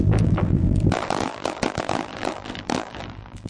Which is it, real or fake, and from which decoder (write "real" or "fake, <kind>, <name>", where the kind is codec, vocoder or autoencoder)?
fake, vocoder, BigVGAN v2